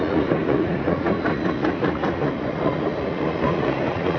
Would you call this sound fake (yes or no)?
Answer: yes